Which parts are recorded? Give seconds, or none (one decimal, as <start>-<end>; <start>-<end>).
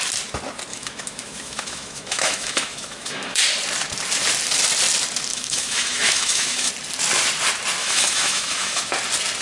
0.0-0.7; 3.4-5.3; 6.7-7.8; 8.9-9.4